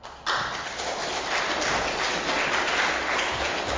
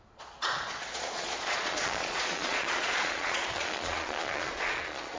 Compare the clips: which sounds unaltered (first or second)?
first